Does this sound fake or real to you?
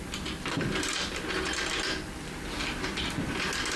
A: real